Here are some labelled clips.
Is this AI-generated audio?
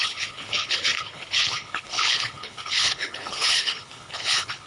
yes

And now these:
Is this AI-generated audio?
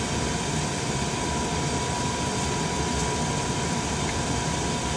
no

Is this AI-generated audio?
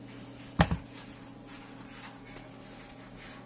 no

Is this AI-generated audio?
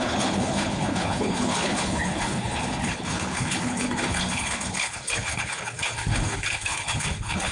yes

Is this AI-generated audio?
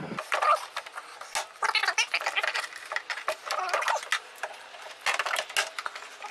no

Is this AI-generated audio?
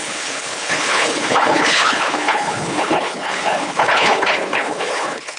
yes